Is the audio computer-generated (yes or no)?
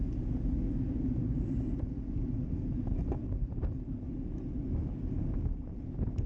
no